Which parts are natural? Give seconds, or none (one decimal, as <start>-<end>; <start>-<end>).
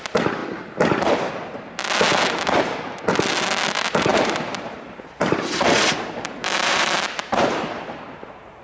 0.0-4.1